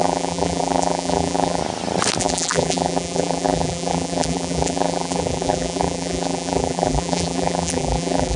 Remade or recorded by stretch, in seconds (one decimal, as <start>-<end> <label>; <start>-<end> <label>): 0.0-1.6 remade; 1.6-2.2 recorded; 2.2-8.4 remade